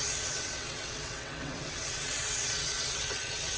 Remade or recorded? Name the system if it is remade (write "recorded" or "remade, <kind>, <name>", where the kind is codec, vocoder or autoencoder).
remade, vocoder, WaveNeXt